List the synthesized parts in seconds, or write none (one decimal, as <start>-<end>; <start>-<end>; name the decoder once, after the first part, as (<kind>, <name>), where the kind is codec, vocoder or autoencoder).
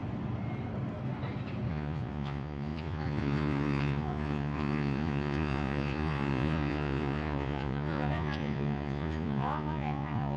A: 1.7-10.4 (vocoder, Vocos)